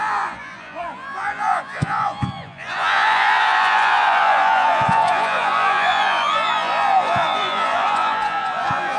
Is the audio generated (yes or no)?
yes